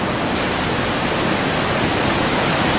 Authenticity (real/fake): real